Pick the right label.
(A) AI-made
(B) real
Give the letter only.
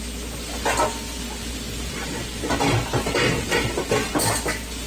B